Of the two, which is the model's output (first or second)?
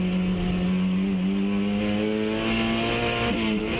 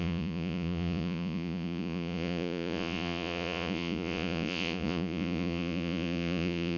second